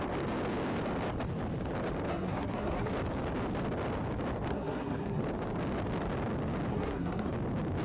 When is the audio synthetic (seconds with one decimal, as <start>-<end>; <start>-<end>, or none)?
2.1-2.9; 4.5-5.2; 6.7-7.3